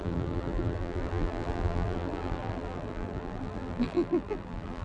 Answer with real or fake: fake